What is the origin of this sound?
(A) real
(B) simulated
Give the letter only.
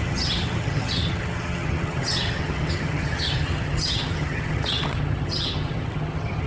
B